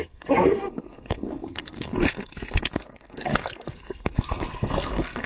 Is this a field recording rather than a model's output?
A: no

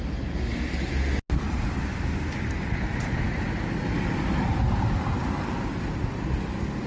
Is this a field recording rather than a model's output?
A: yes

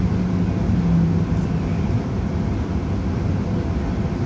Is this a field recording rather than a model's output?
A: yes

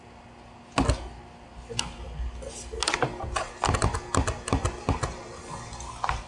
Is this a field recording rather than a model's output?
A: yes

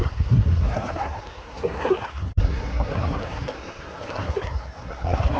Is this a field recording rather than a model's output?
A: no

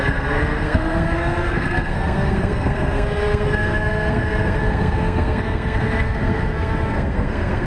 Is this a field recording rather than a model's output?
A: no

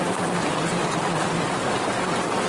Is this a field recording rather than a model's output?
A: yes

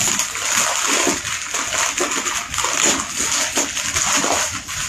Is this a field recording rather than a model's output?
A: yes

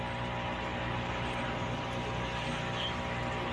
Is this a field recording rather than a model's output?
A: yes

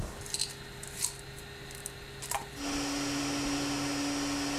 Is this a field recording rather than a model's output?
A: yes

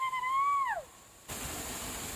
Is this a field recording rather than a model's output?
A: yes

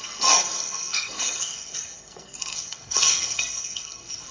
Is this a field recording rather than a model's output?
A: no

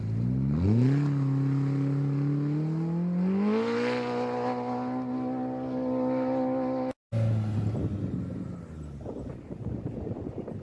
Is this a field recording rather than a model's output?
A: yes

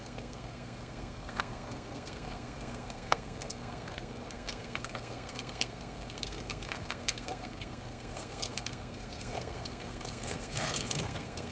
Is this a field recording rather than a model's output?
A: no